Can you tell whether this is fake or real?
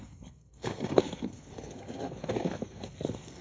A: fake